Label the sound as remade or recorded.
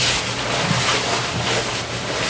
recorded